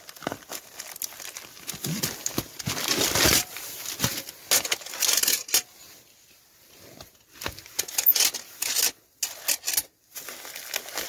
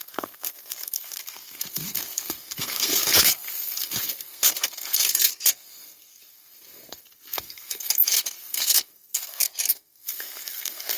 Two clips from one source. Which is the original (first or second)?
first